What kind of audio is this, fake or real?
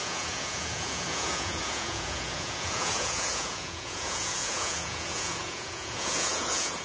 fake